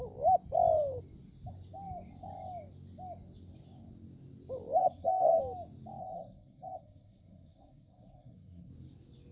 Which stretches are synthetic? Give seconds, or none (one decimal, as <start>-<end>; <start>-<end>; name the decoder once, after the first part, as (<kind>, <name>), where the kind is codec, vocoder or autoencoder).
4.8-5.4 (codec, SNAC); 6.0-8.7